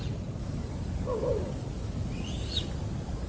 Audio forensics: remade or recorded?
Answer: recorded